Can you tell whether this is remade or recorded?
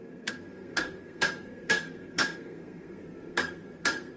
remade